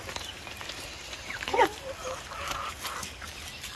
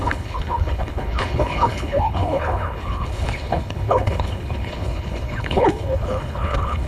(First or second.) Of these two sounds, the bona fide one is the first